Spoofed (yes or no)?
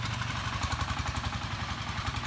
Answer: yes